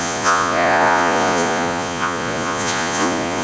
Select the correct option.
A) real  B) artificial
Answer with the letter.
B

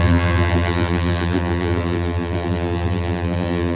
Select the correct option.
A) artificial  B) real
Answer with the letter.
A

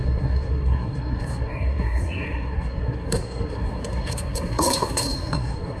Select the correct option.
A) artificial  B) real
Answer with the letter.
A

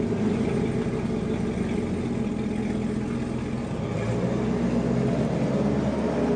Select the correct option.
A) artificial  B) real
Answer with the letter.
B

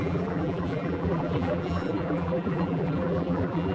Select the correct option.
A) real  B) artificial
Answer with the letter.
B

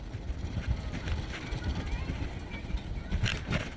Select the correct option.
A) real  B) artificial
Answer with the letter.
A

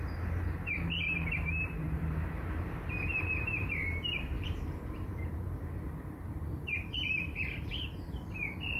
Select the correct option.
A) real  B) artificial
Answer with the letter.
B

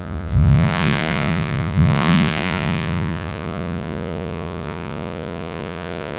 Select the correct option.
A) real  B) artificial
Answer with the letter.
B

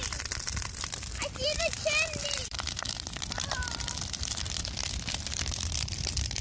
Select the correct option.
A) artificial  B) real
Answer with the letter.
A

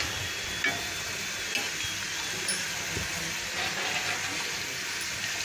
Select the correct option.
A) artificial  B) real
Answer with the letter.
B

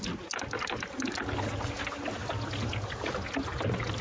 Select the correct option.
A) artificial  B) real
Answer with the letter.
B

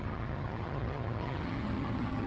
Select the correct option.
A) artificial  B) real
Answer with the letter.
A